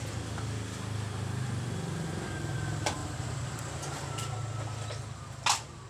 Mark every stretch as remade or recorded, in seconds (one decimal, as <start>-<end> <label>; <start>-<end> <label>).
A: 0.0-5.9 recorded